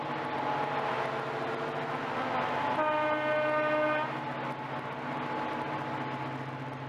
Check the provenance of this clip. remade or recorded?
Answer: recorded